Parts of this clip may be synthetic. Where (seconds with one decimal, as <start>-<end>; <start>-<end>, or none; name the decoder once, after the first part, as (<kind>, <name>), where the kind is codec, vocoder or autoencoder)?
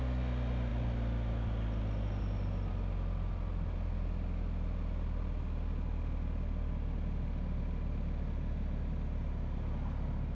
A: none